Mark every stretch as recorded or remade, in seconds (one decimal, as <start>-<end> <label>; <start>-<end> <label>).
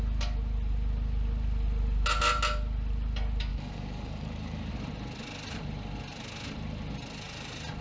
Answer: 0.0-3.5 recorded; 3.5-4.7 remade; 4.7-7.8 recorded